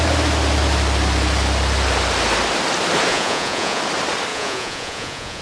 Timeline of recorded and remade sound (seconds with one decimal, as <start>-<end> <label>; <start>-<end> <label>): 0.0-3.1 recorded; 3.1-3.8 remade; 3.8-4.3 recorded; 4.3-5.4 remade